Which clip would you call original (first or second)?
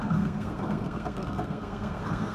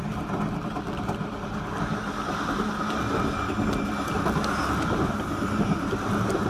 second